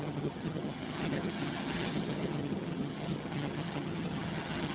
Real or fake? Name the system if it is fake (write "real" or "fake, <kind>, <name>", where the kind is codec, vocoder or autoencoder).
fake, vocoder, HiFi-GAN